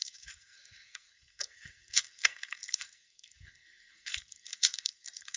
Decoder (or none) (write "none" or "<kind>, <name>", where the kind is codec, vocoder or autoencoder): codec, SNAC